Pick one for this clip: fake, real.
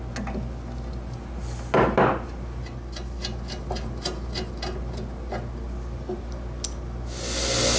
real